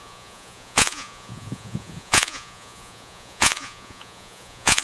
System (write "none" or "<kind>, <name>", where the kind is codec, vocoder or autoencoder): vocoder, Vocos